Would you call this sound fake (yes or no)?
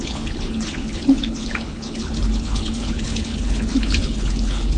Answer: yes